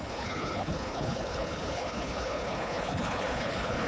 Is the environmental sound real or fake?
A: fake